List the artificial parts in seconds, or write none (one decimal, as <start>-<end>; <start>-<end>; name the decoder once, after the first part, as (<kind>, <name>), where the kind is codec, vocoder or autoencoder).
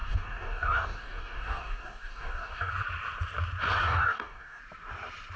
0.0-2.7 (codec, DAC); 3.8-4.6